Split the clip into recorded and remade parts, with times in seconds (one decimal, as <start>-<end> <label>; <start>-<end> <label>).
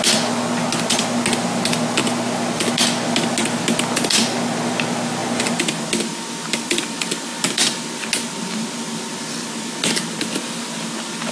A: 0.0-11.3 recorded